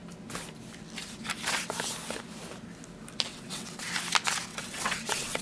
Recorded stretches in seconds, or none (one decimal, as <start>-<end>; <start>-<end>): 0.0-3.3; 3.8-4.5